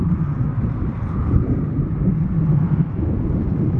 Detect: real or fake real